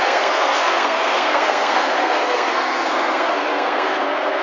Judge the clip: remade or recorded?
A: remade